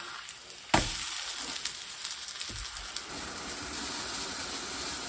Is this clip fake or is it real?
real